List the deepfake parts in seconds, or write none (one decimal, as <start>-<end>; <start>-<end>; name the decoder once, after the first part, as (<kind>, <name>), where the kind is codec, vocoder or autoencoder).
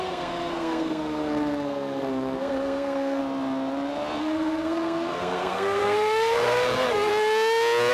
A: 0.0-3.2 (codec, SNAC); 4.2-7.1